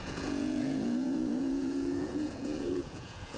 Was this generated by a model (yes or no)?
yes